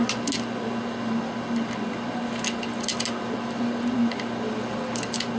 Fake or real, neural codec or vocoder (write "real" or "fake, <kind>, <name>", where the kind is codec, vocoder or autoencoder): real